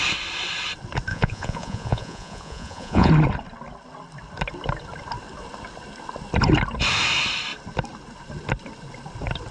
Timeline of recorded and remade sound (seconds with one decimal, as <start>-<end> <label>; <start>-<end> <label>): 0.0-1.1 recorded; 1.1-3.1 remade; 3.1-9.5 recorded